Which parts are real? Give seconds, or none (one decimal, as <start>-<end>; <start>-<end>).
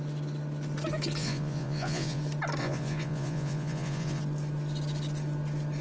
0.0-1.2; 2.2-2.6; 4.2-5.8